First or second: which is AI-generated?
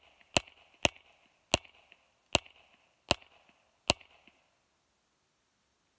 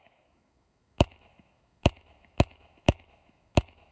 second